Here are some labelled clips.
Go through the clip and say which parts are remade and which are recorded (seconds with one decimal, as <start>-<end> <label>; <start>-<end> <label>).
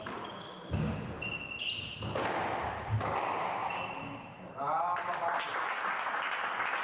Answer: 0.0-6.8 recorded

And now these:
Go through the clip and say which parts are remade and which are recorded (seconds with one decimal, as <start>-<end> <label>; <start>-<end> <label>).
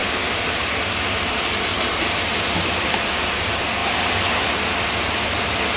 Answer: 0.0-1.7 recorded; 1.7-3.1 remade; 3.1-5.8 recorded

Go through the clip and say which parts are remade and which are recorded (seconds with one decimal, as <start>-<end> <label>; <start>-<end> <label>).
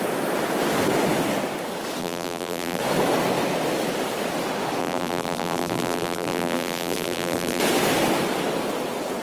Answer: 0.0-2.0 recorded; 2.0-2.8 remade; 2.8-4.8 recorded; 4.8-7.6 remade; 7.6-9.2 recorded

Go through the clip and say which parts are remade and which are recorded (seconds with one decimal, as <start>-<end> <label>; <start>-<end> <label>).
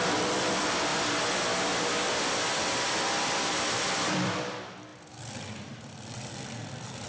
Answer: 0.0-0.9 remade; 0.9-1.8 recorded; 1.8-4.9 remade; 4.9-5.8 recorded; 5.8-7.1 remade